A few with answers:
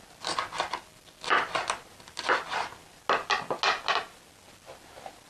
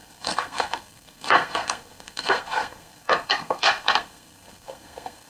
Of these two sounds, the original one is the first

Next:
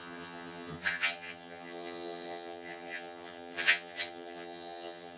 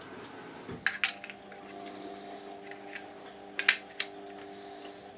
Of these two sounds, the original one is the second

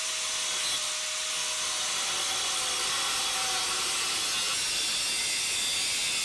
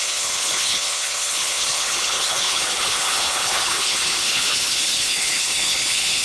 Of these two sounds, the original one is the first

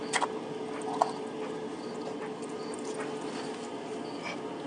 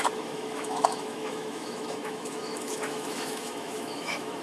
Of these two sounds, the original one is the first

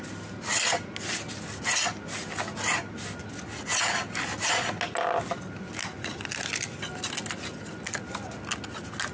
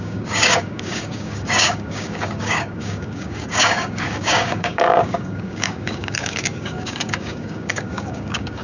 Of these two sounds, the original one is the first